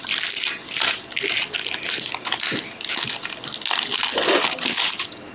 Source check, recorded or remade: recorded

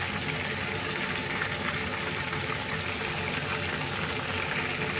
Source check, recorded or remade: recorded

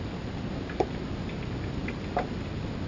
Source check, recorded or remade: recorded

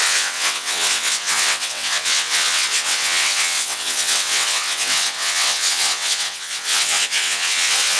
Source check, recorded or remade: remade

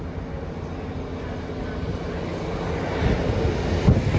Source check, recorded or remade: recorded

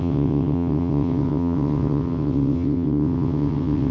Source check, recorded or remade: remade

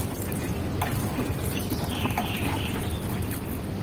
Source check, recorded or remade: recorded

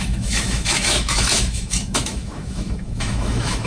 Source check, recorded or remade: remade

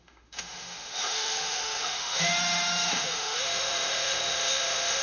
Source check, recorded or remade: remade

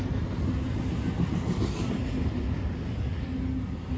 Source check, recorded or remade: recorded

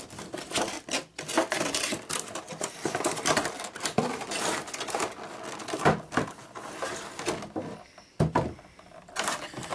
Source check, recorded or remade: recorded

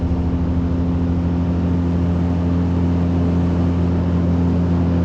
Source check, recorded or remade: recorded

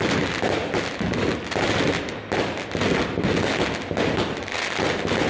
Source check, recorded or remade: recorded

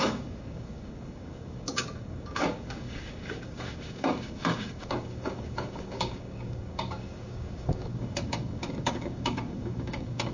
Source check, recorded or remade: remade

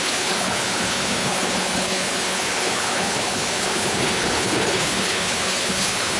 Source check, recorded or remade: remade